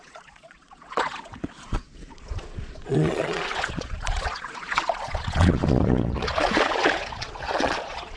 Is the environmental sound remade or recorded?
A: remade